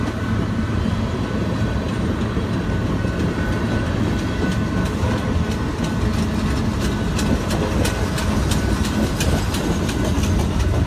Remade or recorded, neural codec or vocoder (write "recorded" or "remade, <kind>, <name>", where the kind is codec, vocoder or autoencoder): recorded